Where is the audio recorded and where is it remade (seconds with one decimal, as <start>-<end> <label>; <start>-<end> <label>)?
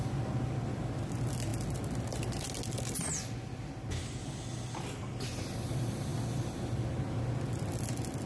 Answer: 0.0-8.3 recorded